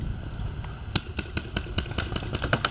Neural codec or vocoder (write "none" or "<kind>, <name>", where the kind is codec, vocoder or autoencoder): none